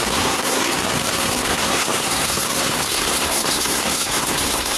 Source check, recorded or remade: remade